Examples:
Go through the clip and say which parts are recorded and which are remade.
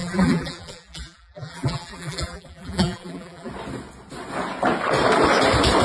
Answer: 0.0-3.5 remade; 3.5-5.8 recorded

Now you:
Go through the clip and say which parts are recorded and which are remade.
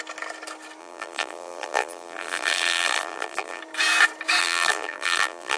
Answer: 0.0-0.8 recorded; 0.8-3.6 remade; 3.6-4.4 recorded; 4.4-5.6 remade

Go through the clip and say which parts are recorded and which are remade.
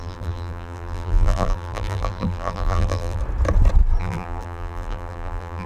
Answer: 0.0-3.2 remade; 3.2-4.0 recorded; 4.0-5.7 remade